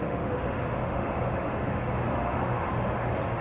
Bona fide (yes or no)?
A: no